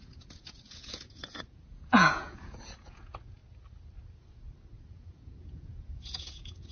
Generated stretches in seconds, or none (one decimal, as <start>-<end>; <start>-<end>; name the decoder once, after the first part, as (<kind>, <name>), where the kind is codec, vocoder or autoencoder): 0.0-3.4 (vocoder, Vocos); 4.9-6.7